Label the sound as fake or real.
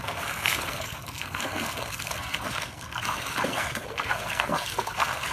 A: fake